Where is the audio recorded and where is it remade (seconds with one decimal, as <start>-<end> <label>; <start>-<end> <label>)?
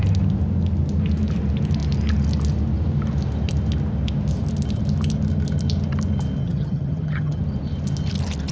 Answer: 0.0-6.4 recorded; 6.4-7.4 remade; 7.4-8.5 recorded